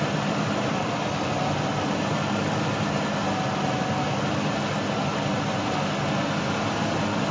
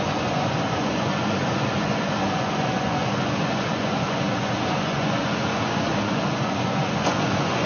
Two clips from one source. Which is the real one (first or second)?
first